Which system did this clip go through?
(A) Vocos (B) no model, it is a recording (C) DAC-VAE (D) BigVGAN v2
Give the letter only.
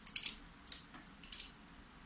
B